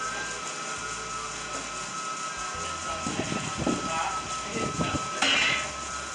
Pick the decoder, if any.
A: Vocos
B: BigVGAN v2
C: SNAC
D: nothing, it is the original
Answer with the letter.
D